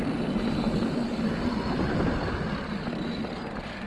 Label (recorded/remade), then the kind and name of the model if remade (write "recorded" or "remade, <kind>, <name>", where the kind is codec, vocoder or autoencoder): remade, vocoder, BigVGAN v2